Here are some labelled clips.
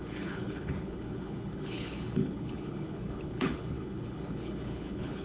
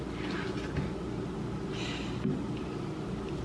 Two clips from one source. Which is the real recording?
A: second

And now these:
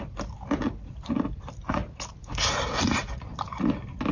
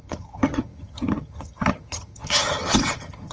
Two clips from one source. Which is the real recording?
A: first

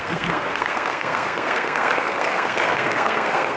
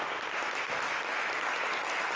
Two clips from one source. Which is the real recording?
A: second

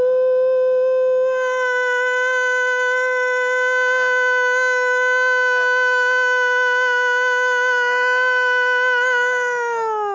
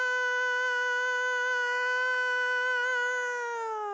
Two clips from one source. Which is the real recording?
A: second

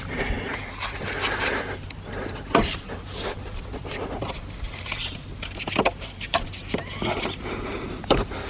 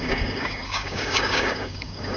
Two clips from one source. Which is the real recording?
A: first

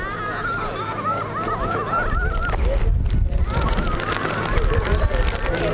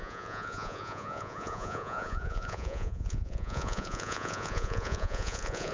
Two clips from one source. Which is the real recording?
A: first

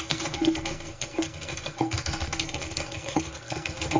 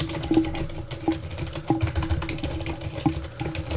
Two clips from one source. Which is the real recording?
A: second